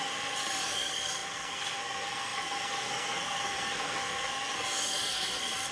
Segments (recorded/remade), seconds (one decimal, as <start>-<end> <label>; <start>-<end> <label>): 0.0-5.7 remade